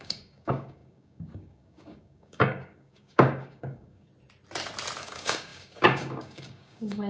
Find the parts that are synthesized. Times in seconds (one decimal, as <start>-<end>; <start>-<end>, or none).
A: 0.0-4.1; 5.0-7.1